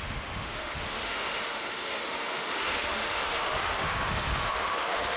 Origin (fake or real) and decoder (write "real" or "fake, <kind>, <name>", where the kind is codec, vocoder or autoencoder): fake, autoencoder, DAC-VAE